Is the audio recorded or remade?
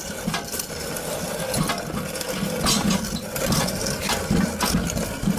recorded